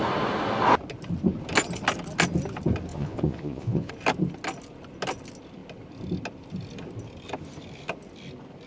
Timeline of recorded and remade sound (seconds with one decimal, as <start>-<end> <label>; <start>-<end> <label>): 0.0-2.9 recorded; 2.9-3.9 remade; 3.9-8.7 recorded

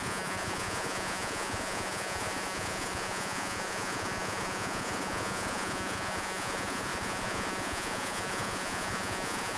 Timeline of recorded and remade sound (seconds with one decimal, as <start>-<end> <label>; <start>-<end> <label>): 0.0-9.6 remade